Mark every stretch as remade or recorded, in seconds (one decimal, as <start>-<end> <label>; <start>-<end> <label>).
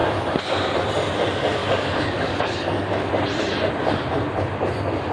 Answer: 0.0-1.6 recorded; 1.6-3.1 remade; 3.1-5.1 recorded